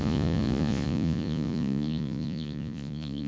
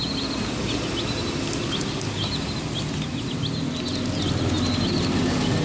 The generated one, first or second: first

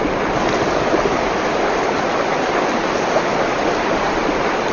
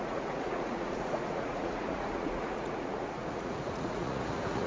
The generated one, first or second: second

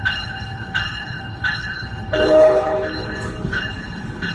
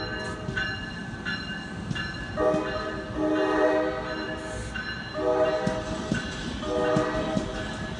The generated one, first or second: first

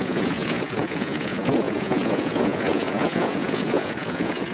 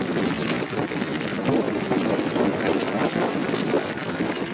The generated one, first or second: first